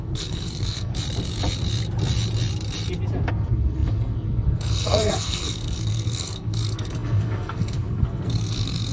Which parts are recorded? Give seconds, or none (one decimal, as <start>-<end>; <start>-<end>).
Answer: 0.9-3.3